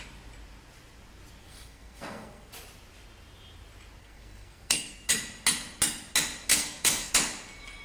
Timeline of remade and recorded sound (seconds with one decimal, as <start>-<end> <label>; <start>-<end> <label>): 0.0-1.4 recorded; 1.4-2.5 remade; 2.5-4.0 recorded; 4.0-5.1 remade; 5.1-6.5 recorded; 6.5-7.1 remade; 7.1-7.8 recorded